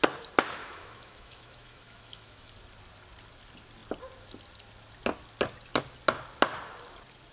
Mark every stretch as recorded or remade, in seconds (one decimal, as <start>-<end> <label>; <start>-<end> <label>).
0.0-0.6 recorded; 0.6-2.5 remade; 2.5-7.3 recorded